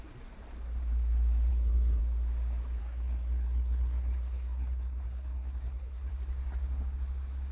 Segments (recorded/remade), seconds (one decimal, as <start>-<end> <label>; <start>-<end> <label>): 0.0-1.5 recorded; 1.5-2.0 remade; 2.0-2.8 recorded; 2.8-6.1 remade; 6.1-7.5 recorded